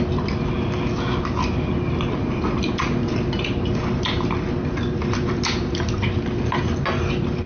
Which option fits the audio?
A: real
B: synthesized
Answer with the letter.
A